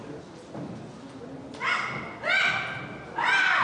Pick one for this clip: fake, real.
real